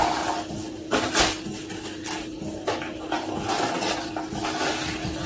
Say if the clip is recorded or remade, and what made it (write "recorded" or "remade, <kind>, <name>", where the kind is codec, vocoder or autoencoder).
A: recorded